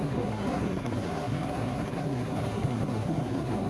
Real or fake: fake